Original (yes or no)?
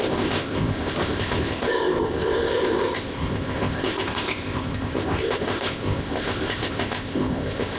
no